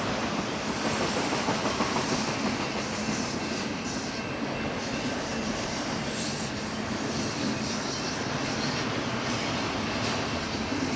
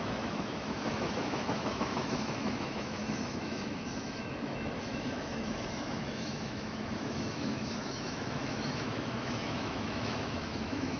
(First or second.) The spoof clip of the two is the second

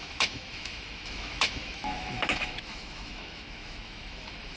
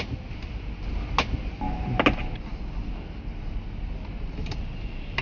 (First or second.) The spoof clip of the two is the first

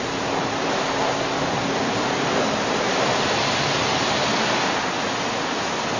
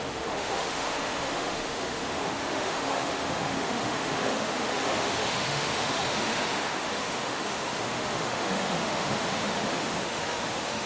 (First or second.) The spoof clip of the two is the second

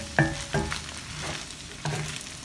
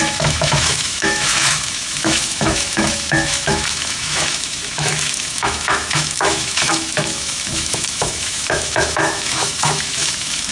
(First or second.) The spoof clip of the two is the second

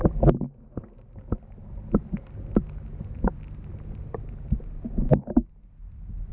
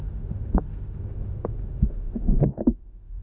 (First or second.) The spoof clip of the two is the second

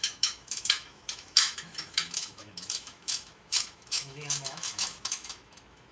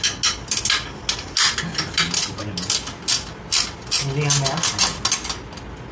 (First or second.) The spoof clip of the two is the first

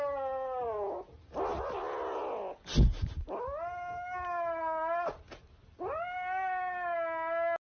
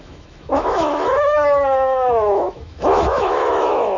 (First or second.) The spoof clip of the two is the second